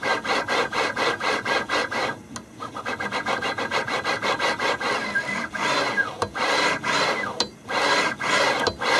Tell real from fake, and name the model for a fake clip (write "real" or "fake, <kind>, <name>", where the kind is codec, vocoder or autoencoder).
real